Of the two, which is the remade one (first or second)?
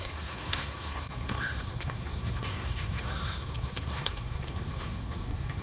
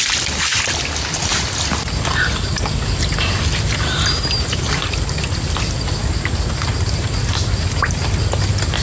first